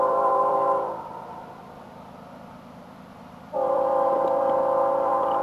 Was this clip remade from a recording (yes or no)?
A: yes